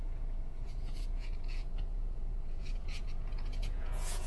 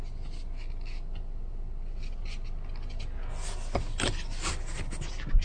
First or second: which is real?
second